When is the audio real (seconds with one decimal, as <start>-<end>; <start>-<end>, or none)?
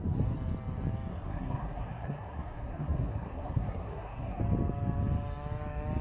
0.0-1.1; 4.4-6.0